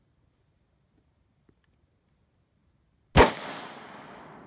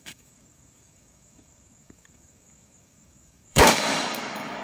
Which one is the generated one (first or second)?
second